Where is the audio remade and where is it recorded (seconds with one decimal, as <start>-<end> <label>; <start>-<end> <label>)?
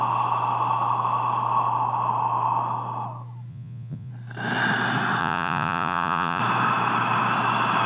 0.0-3.5 recorded; 3.5-4.1 remade; 4.1-5.2 recorded; 5.2-6.4 remade; 6.4-7.9 recorded